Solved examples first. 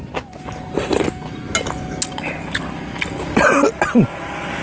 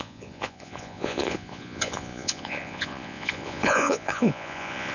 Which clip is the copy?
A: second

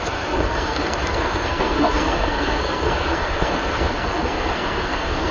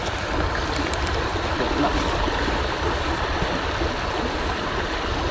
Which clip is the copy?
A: first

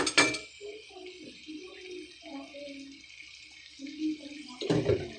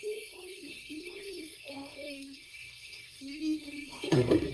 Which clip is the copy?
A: second